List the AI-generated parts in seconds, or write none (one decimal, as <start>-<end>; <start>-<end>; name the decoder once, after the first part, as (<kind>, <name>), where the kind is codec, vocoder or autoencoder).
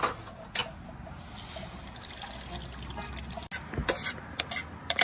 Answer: none